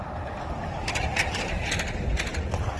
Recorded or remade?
recorded